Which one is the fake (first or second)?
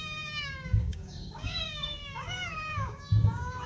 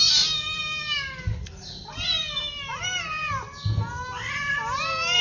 first